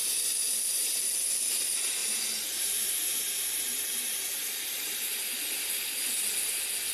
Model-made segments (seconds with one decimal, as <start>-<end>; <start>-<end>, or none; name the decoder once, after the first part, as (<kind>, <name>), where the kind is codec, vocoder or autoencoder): 2.0-5.3 (vocoder, BigVGAN v2)